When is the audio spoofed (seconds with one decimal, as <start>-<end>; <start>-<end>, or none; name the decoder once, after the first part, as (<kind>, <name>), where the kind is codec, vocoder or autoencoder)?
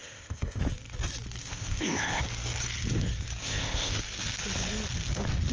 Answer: 0.0-0.6 (codec, ZipCodec); 1.4-2.2; 3.4-4.0